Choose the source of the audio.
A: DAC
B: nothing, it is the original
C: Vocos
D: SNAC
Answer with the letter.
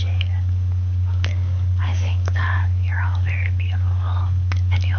A